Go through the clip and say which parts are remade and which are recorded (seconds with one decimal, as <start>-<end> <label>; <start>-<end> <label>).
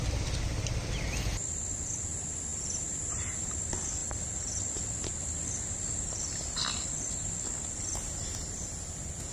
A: 0.0-2.5 recorded; 2.5-3.6 remade; 3.6-4.0 recorded; 4.0-7.4 remade; 7.4-9.3 recorded